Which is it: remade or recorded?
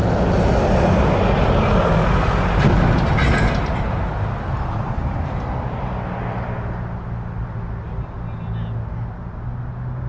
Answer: recorded